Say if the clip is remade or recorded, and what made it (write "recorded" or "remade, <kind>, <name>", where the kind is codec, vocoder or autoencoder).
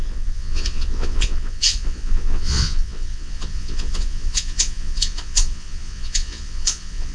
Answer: remade, vocoder, Vocos